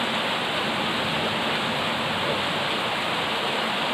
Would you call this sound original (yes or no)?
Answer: yes